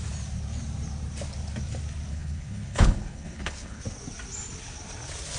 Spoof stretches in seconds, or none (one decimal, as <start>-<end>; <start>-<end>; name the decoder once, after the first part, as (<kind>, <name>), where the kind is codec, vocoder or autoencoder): 2.1-3.8 (codec, HILCodec)